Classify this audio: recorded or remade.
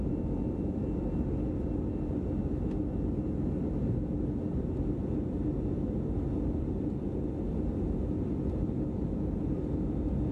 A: recorded